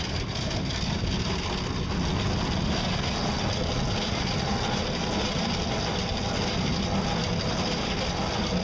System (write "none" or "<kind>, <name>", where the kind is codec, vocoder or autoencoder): none